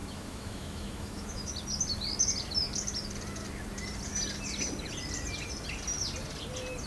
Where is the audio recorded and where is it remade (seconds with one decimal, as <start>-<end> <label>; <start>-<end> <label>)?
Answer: 0.0-1.5 remade; 1.5-6.9 recorded